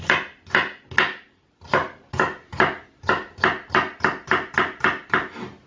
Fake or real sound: real